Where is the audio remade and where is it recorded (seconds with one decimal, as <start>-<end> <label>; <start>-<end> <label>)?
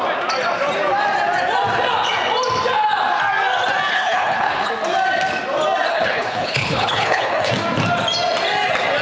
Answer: 0.0-3.9 recorded; 3.9-4.7 remade; 4.7-5.9 recorded; 5.9-7.5 remade; 7.5-9.0 recorded